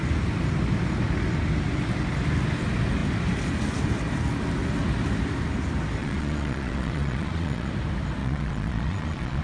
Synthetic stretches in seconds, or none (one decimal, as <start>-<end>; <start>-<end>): 6.0-7.7; 8.2-9.4